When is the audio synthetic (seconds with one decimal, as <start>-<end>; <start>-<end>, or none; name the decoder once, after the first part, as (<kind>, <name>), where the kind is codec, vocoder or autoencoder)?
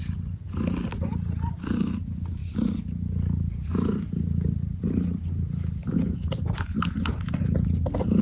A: none